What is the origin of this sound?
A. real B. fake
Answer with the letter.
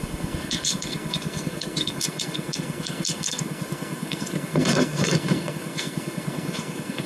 B